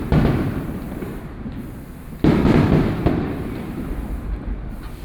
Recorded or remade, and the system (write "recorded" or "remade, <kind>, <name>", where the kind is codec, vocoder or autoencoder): recorded